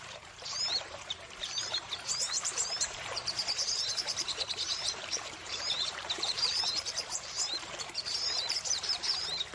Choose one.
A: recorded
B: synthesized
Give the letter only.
B